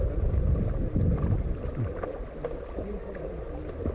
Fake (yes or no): no